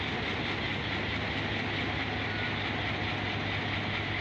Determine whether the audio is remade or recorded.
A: recorded